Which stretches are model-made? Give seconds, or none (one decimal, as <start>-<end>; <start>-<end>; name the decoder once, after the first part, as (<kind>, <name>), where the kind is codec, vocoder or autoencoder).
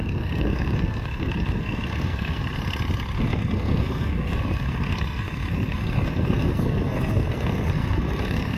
0.0-2.4 (codec, SNAC); 3.2-8.6